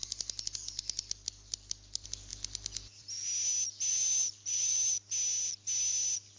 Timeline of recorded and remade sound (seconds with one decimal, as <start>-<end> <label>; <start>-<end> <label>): 0.0-3.9 recorded; 3.9-5.1 remade; 5.1-6.4 recorded